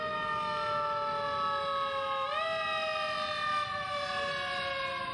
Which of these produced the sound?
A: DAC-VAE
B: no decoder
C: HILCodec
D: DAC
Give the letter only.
B